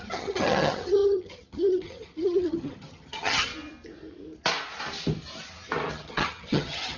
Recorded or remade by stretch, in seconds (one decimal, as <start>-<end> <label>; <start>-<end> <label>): 0.0-3.5 remade; 3.5-5.9 recorded; 5.9-7.0 remade